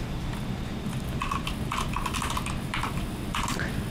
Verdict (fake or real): real